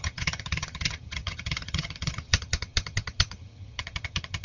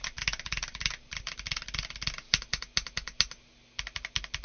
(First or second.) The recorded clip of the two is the second